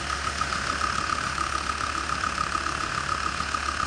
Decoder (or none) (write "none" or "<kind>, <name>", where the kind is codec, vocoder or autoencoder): autoencoder, DAC-VAE